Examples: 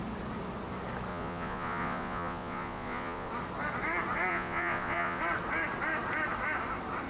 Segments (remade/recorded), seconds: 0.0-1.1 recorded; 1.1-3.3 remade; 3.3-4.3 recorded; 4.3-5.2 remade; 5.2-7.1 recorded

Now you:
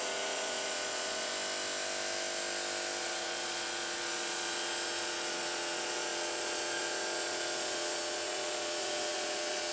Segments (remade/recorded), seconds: 0.0-1.3 remade; 1.3-3.0 recorded; 3.0-9.7 remade

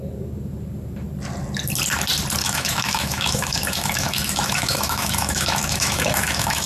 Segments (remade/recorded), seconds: 0.0-2.4 recorded; 2.4-6.7 remade

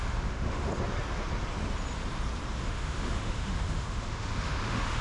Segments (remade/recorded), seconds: 0.0-0.7 remade; 0.7-2.6 recorded; 2.6-5.0 remade

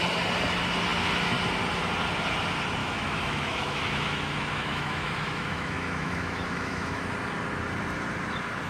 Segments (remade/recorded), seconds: 0.0-2.8 recorded; 2.8-7.0 remade; 7.0-8.7 recorded